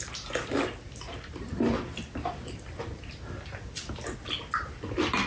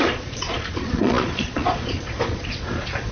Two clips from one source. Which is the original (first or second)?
first